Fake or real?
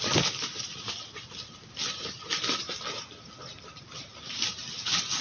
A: real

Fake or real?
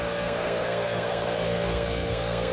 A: fake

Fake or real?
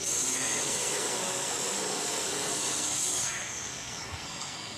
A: fake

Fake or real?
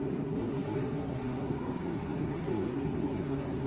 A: fake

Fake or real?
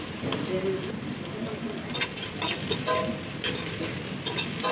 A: real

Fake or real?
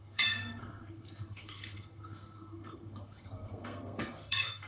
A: fake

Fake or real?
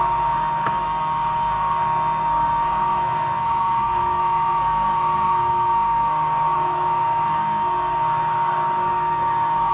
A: fake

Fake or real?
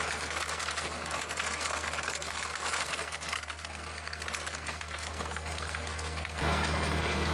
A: fake